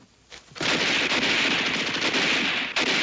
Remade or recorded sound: remade